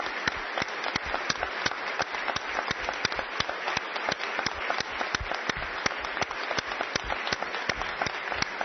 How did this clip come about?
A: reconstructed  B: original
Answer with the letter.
B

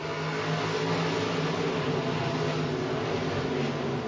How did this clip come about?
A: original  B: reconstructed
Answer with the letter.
A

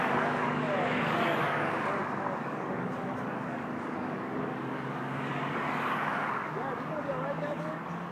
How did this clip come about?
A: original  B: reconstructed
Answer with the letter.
B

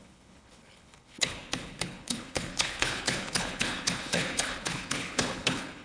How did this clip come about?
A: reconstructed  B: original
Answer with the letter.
A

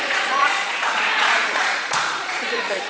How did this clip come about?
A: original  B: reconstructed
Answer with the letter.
B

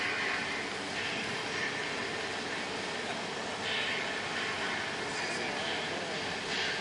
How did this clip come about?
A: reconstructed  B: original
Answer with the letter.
B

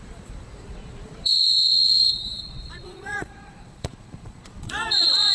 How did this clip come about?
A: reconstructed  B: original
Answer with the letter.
A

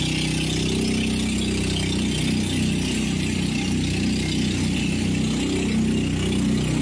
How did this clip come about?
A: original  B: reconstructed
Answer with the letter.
A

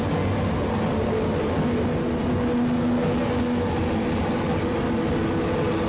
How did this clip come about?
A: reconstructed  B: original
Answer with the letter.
B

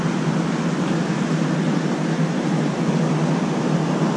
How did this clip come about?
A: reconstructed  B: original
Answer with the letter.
B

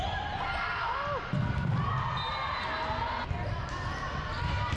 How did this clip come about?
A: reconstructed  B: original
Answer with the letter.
B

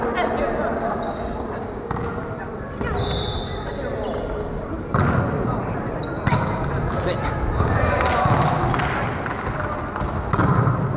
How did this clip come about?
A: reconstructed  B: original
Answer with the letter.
B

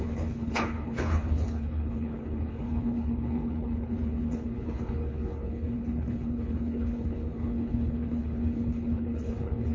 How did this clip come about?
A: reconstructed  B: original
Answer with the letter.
A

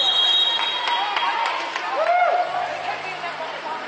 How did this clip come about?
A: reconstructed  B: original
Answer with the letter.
B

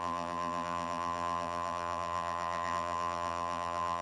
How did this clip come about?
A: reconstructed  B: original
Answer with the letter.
A